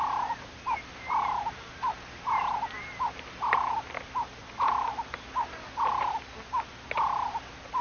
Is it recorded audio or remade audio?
recorded